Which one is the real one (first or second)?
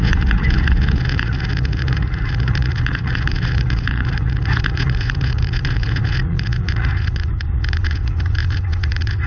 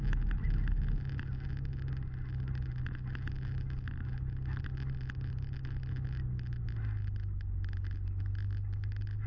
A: second